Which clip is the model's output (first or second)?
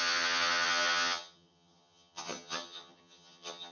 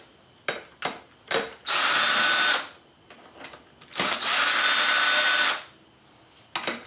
first